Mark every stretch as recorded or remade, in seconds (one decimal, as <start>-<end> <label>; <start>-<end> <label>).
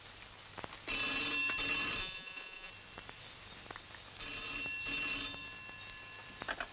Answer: 0.0-2.0 recorded; 2.0-2.7 remade; 2.7-6.7 recorded